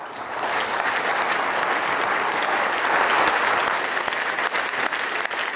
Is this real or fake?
real